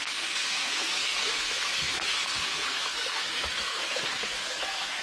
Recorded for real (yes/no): no